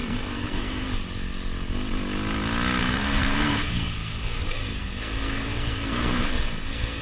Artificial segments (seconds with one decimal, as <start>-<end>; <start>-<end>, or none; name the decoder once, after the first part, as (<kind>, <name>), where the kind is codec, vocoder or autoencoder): 0.0-0.9 (codec, SNAC); 2.8-7.0